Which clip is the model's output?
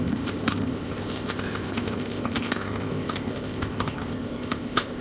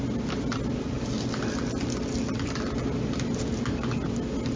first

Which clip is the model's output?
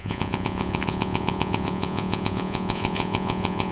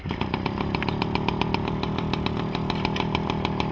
first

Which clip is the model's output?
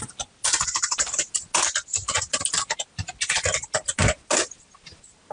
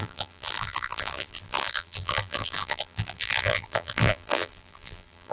second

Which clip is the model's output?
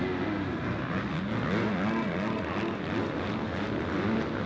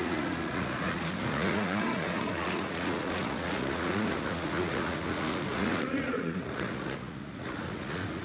second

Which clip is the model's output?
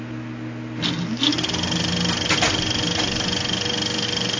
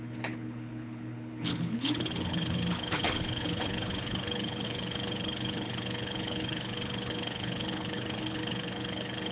second